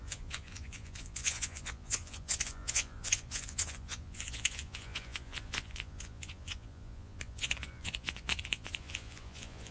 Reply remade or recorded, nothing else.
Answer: remade